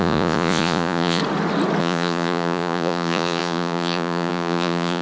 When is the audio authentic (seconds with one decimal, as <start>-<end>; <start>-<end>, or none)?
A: 1.2-1.8